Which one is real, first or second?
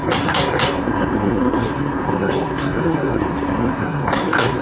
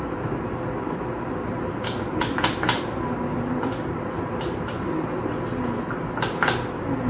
second